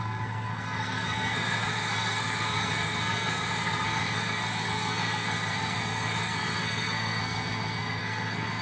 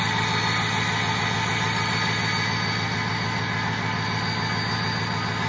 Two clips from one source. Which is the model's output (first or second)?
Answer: first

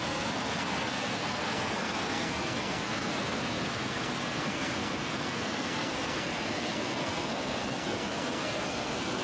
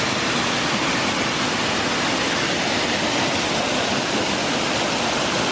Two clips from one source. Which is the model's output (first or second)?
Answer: first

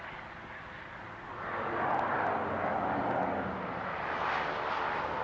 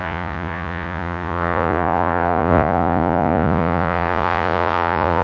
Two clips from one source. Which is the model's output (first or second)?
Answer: second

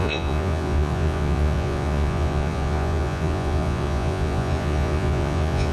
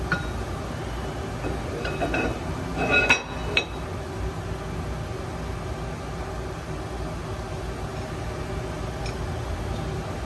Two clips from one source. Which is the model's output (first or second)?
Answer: first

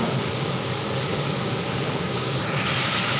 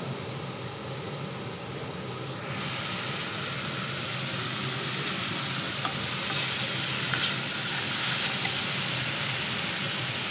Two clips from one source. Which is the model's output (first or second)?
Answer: first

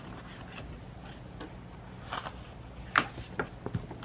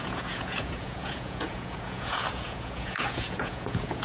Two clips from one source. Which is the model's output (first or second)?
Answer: second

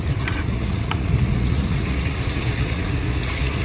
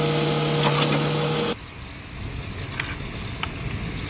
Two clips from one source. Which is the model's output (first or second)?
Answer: first